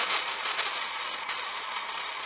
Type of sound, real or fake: fake